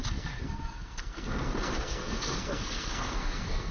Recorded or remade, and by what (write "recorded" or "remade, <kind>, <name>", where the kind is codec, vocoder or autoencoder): remade, codec, SNAC